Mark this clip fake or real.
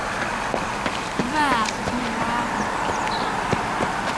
fake